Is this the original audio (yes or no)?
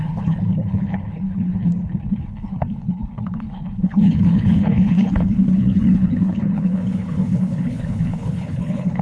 no